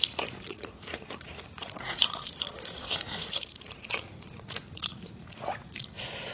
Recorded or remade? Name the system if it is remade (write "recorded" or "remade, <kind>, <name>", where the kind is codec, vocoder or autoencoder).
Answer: remade, vocoder, Vocos